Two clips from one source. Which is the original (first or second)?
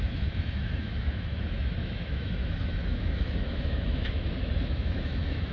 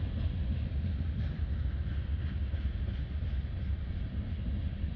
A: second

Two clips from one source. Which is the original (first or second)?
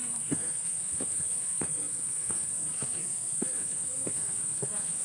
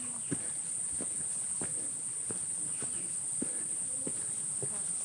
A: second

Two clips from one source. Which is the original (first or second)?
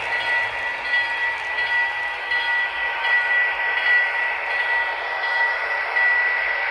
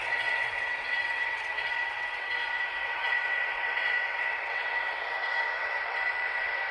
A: first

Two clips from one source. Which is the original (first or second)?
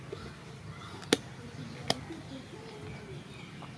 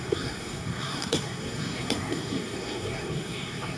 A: first